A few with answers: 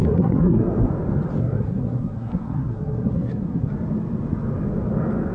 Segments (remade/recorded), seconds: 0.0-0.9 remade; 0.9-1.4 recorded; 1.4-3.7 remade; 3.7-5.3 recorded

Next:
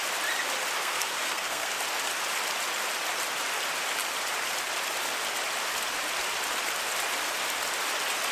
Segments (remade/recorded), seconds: 0.0-0.8 recorded; 0.8-1.7 remade; 1.7-8.3 recorded

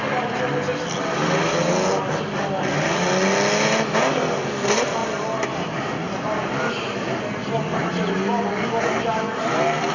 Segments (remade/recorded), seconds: 0.0-9.9 recorded